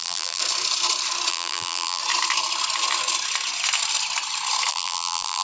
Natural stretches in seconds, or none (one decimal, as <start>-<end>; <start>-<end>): 0.4-1.3; 2.0-4.7